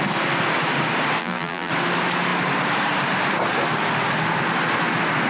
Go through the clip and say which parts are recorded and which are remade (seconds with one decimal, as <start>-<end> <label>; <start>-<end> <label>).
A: 0.0-1.2 recorded; 1.2-1.7 remade; 1.7-5.3 recorded